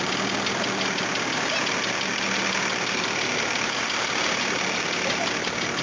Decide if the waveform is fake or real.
real